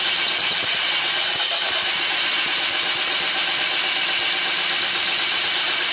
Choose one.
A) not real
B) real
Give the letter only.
B